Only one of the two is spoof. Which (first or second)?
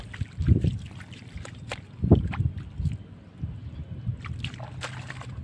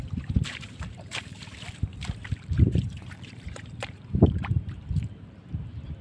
second